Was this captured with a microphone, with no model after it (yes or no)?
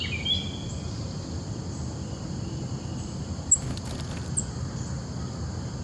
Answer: yes